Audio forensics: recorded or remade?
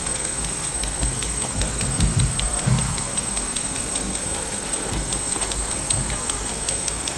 remade